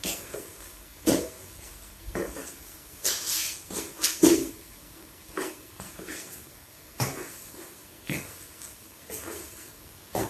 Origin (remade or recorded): remade